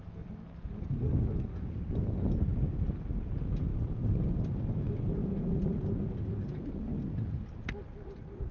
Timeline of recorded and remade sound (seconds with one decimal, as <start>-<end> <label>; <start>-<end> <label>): 0.0-8.5 recorded